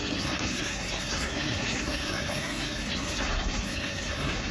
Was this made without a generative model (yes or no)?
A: no